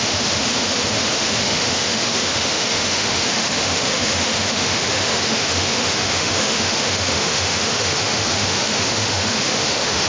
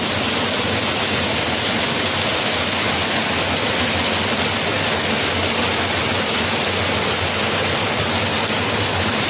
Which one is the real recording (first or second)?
second